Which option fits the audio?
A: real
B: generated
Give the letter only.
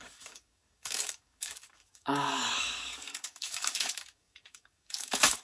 B